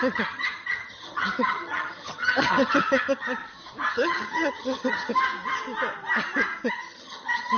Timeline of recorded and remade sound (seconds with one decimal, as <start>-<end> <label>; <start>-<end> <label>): 0.0-3.4 remade; 3.4-3.9 recorded; 3.9-5.1 remade; 5.1-6.7 recorded; 6.7-7.6 remade